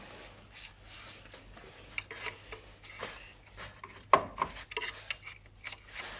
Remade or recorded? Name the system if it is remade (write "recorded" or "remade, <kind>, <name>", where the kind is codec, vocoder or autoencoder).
recorded